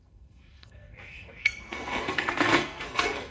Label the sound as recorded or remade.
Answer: remade